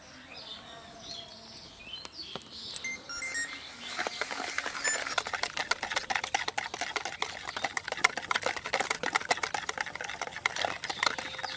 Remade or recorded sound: recorded